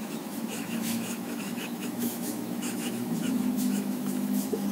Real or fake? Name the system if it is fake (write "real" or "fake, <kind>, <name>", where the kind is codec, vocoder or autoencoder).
fake, autoencoder, DAC-VAE